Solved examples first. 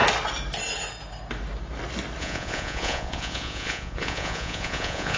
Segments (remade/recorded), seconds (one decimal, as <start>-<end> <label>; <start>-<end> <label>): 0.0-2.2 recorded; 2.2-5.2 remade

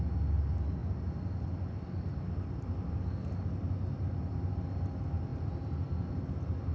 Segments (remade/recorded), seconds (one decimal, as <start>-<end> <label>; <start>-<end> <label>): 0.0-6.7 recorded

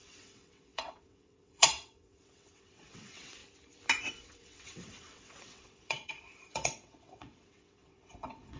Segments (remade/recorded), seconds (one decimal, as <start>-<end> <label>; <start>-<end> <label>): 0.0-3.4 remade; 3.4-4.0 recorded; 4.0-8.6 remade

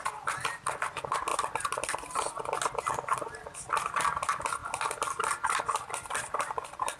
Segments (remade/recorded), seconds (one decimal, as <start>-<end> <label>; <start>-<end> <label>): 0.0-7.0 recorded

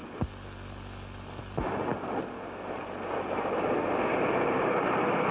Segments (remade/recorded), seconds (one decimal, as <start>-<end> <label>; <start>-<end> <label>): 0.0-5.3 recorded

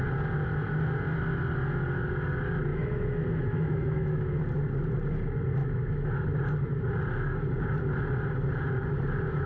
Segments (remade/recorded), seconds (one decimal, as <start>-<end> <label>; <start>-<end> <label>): 0.0-2.7 recorded; 2.7-4.4 remade; 4.4-5.6 recorded; 5.6-6.3 remade; 6.3-9.5 recorded